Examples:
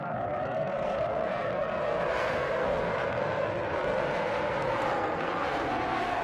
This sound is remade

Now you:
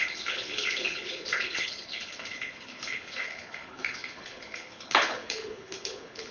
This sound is remade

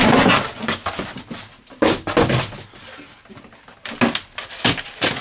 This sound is recorded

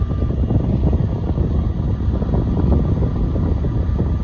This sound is recorded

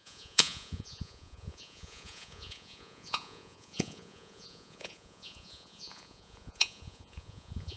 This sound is remade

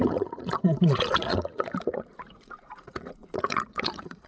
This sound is remade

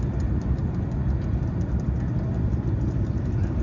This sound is recorded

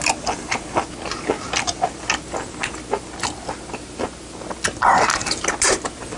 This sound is recorded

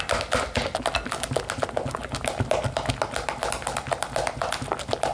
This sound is recorded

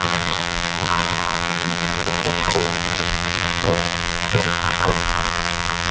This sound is remade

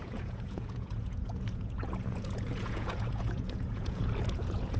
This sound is remade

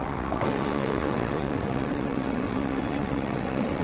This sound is remade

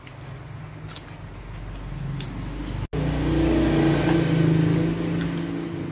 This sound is recorded